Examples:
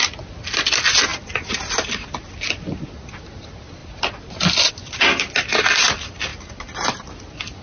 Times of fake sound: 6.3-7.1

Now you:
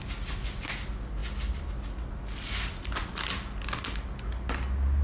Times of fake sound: none

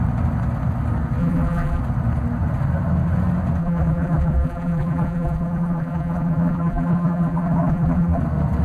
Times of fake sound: 1.2-1.8; 3.6-8.2

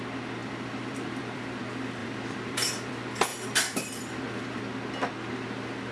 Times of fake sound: 0.4-1.6; 2.0-2.9; 3.3-4.6

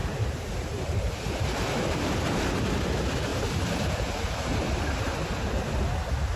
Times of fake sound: 0.0-2.9; 3.3-5.5

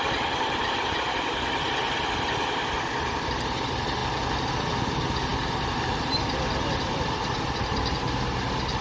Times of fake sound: none

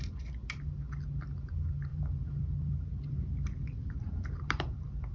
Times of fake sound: 1.9-5.1